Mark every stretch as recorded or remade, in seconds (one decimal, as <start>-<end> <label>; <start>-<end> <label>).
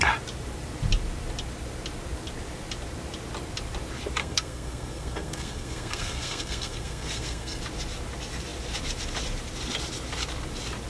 0.0-4.2 recorded; 4.2-7.6 remade; 7.6-10.9 recorded